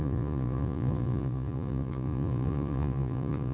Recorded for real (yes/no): no